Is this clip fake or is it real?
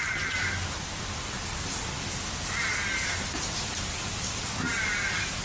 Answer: real